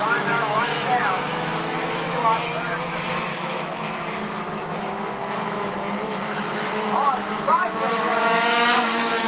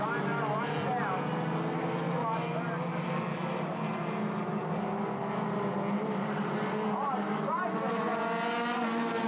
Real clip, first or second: second